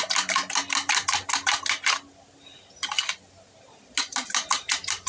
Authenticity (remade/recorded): recorded